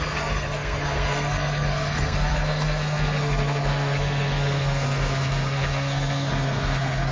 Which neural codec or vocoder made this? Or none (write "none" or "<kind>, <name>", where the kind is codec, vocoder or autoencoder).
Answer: codec, SNAC